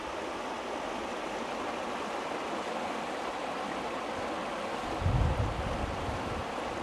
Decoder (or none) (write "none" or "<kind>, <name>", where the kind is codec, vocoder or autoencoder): none